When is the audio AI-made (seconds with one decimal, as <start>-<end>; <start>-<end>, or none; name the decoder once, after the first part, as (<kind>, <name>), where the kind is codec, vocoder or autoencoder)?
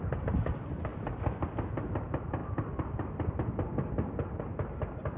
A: 0.9-1.5 (vocoder, BigVGAN v2); 2.4-4.4